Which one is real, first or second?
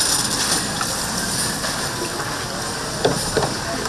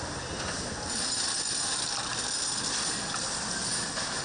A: second